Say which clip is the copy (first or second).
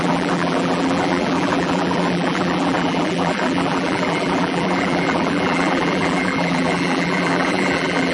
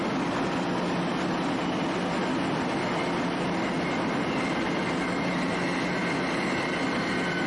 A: first